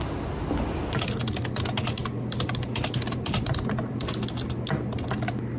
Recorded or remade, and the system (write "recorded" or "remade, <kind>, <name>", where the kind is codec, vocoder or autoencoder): recorded